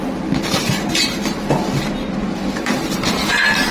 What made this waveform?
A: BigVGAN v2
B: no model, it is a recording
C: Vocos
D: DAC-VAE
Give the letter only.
B